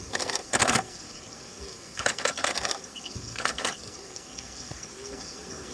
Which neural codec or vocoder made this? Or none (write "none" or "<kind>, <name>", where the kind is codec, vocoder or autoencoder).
codec, SNAC